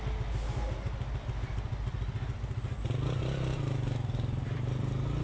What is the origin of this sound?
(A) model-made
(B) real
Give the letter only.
B